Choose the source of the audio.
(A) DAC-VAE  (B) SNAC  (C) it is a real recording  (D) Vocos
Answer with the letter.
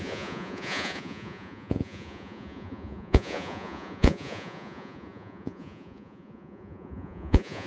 D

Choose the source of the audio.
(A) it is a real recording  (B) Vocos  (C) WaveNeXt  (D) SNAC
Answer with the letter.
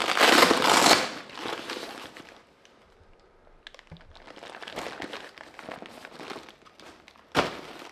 A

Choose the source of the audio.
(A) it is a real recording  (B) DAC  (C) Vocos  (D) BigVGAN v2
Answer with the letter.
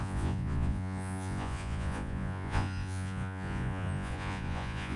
C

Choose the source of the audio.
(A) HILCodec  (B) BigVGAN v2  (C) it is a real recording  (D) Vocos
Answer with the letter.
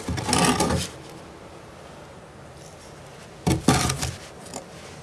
C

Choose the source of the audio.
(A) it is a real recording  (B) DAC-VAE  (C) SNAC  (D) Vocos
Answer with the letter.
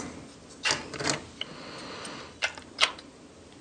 A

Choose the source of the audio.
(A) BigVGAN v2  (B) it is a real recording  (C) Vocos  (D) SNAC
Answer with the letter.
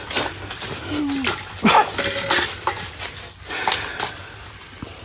B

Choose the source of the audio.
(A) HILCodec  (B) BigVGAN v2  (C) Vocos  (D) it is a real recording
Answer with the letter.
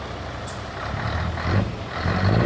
D